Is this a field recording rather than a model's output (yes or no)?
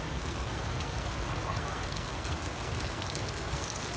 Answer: no